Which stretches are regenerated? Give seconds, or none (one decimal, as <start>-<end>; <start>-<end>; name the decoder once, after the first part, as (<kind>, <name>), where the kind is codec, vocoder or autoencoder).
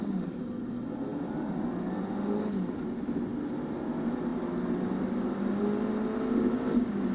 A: none